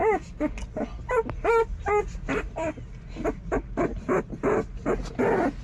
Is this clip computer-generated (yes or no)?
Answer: no